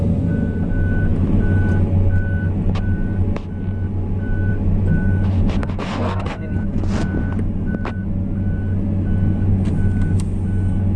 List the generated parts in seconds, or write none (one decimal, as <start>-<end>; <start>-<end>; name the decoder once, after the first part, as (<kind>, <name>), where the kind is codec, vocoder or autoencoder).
5.6-6.4 (codec, SNAC)